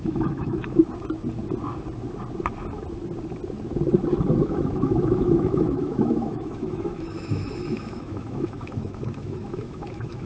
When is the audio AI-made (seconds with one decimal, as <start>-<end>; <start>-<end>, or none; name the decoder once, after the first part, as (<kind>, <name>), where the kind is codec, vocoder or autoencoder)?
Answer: 0.0-0.8 (autoencoder, DAC-VAE); 4.4-10.3